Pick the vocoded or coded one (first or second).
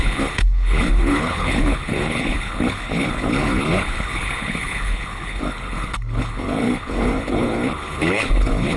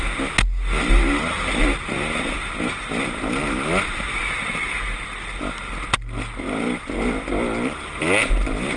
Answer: first